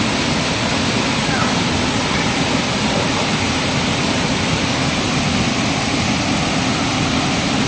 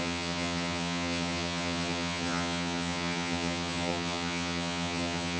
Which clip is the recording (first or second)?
first